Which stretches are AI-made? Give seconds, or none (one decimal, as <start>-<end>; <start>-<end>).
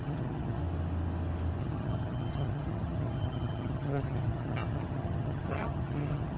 0.0-0.6; 1.6-6.4